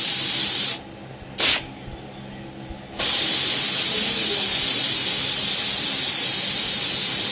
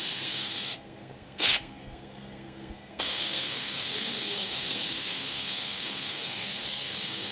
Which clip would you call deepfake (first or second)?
second